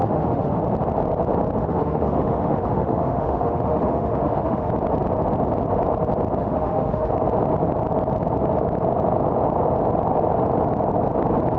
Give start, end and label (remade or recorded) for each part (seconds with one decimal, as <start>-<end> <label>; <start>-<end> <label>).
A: 0.0-0.6 remade; 0.6-1.6 recorded; 1.6-4.7 remade; 4.7-6.4 recorded; 6.4-7.1 remade; 7.1-11.6 recorded